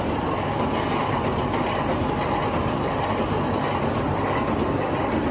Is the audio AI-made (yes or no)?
no